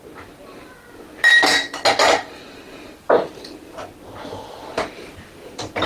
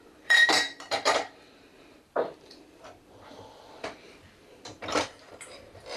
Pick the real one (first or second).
first